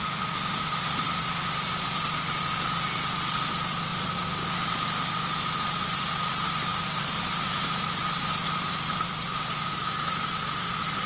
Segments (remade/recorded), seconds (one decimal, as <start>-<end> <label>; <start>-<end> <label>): 0.0-11.1 recorded

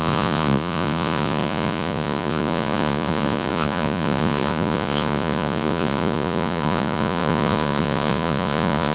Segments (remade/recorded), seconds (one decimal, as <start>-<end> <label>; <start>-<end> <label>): 0.0-8.9 remade

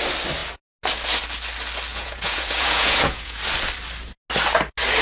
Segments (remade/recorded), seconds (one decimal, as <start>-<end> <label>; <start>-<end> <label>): 0.0-1.9 recorded; 1.9-3.4 remade; 3.4-5.0 recorded